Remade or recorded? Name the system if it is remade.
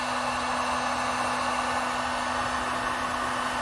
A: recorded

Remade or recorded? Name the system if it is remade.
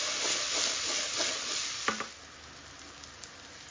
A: recorded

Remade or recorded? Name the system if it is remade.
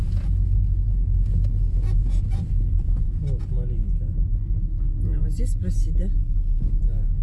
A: recorded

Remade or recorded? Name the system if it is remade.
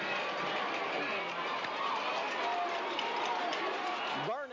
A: recorded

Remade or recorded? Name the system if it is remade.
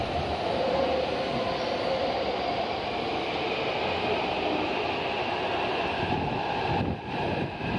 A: remade, vocoder, BigVGAN v2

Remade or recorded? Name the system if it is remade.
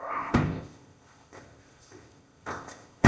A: remade, codec, ZipCodec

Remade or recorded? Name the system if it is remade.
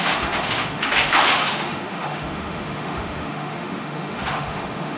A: remade, autoencoder, DAC-VAE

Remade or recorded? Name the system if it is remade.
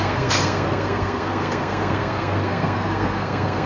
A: remade, codec, SNAC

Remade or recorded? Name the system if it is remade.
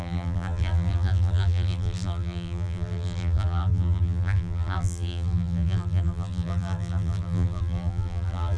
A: remade, vocoder, BigVGAN v2